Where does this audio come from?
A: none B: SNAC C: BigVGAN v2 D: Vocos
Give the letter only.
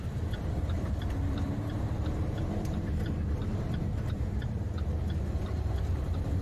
C